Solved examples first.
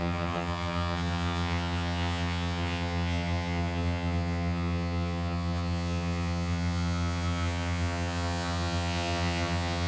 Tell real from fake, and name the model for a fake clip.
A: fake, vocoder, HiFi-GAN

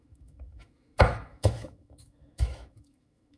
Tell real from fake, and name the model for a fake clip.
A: fake, autoencoder, DAC-VAE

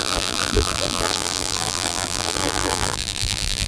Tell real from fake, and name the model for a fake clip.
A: fake, vocoder, BigVGAN v2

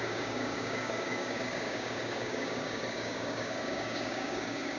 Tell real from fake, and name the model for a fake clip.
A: fake, codec, DAC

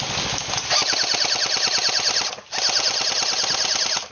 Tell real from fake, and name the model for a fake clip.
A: real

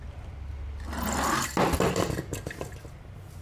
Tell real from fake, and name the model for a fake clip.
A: real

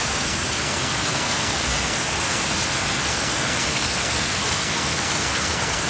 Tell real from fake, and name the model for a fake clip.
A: fake, codec, SNAC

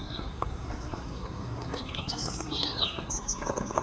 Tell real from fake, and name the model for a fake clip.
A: fake, codec, SNAC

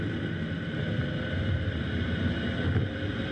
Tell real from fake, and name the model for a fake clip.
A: real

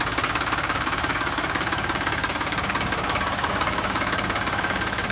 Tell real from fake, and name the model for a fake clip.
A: fake, codec, DAC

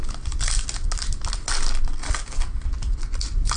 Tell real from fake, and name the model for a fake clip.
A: real